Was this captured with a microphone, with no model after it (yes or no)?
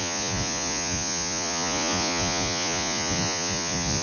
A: no